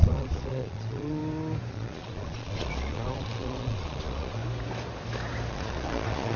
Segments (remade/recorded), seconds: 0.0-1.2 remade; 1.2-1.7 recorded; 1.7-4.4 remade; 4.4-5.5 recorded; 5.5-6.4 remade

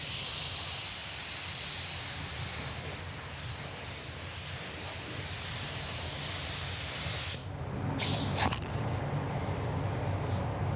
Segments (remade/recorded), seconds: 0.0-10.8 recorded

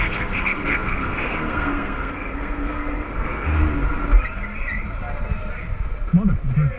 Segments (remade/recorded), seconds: 0.0-3.5 remade; 3.5-6.8 recorded

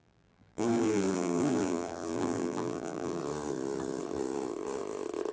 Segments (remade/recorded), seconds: 0.0-3.2 remade; 3.2-5.3 recorded

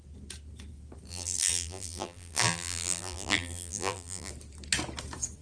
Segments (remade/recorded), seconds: 0.0-1.1 recorded; 1.1-4.3 remade; 4.3-5.4 recorded

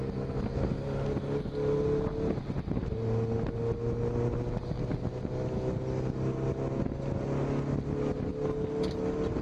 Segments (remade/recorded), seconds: 0.0-9.4 recorded